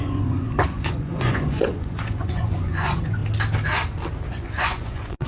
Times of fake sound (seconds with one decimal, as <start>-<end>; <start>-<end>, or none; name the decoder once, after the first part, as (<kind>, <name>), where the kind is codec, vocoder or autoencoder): 0.0-3.2 (vocoder, Vocos); 4.3-5.3